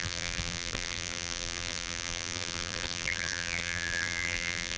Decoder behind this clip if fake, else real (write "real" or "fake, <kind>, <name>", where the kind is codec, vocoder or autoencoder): fake, vocoder, BigVGAN v2